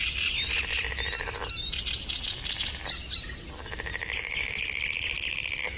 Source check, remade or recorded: recorded